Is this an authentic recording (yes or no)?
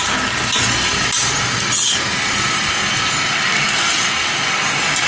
yes